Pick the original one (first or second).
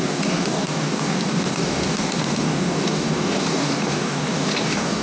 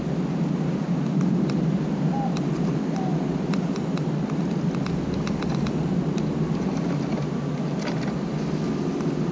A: second